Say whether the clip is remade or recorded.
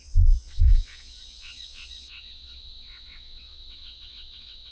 remade